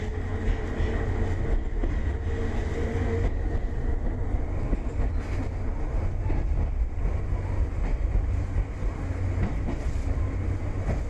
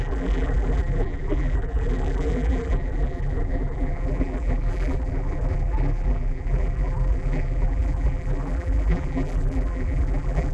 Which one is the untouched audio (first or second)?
first